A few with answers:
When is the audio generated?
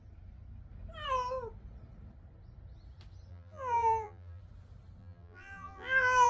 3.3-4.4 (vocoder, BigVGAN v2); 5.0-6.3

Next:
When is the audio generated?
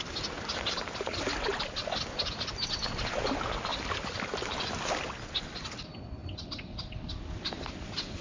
3.7-5.1 (vocoder, BigVGAN v2); 6.2-8.2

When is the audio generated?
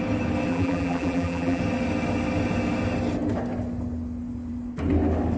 0.5-1.6 (vocoder, BigVGAN v2)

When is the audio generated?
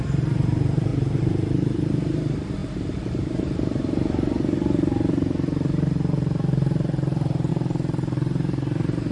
0.0-0.9 (vocoder, BigVGAN v2); 2.0-9.1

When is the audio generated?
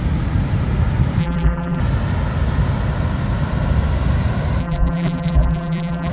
1.2-1.8 (vocoder, BigVGAN v2); 4.6-6.1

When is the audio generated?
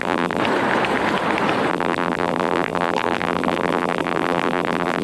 0.0-0.4 (vocoder, BigVGAN v2); 1.7-5.0